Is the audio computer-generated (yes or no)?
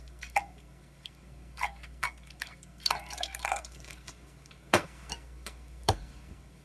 yes